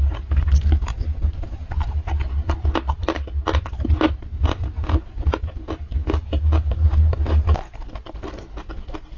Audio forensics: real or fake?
real